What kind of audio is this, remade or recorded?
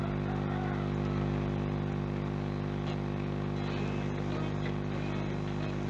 recorded